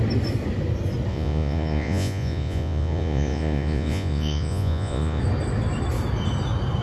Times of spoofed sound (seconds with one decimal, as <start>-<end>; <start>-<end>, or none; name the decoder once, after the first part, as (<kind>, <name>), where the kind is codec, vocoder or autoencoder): 1.1-5.2 (vocoder, Vocos)